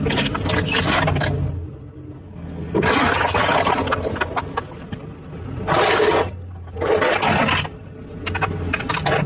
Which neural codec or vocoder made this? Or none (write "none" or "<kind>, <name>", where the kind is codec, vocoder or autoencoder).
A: none